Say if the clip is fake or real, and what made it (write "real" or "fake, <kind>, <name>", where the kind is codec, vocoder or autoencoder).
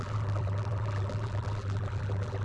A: fake, vocoder, BigVGAN v2